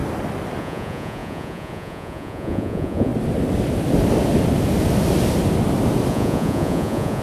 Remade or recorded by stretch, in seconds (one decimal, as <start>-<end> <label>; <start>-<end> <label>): 0.0-0.6 recorded; 0.6-3.1 remade; 3.1-6.1 recorded; 6.1-7.2 remade